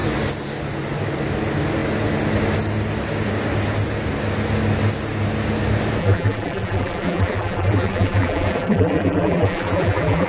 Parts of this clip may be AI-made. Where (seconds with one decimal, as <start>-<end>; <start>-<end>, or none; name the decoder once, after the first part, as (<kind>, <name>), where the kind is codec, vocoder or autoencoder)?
6.0-10.3 (vocoder, BigVGAN v2)